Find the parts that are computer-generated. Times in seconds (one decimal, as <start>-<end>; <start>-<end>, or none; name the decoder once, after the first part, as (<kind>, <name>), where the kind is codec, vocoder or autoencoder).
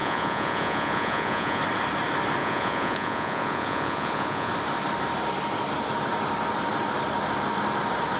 0.0-1.6 (vocoder, Vocos); 2.4-4.5